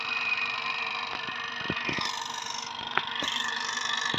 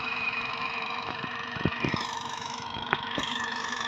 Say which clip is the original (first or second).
first